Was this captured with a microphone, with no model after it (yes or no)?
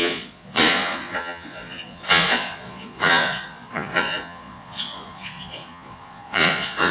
no